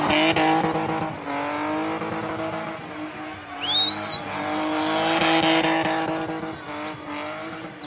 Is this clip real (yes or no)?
yes